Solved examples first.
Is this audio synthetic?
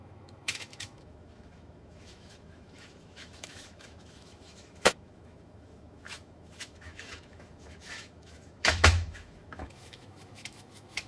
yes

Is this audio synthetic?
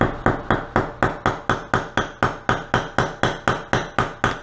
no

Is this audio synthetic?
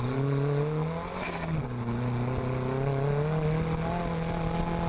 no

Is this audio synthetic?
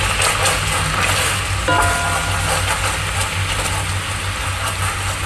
no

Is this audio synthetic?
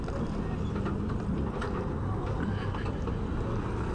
no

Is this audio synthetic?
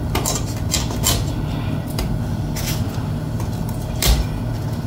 no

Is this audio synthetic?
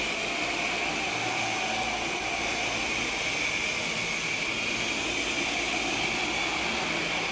no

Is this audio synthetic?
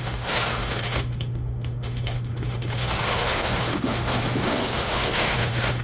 yes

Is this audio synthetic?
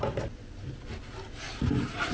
no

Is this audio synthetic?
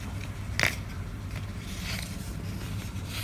no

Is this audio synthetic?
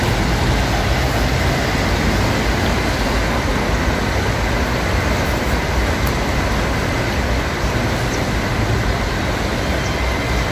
no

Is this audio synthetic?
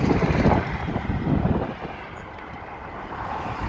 no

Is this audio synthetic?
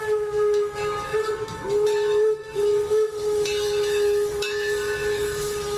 yes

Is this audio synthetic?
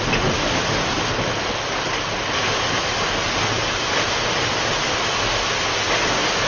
no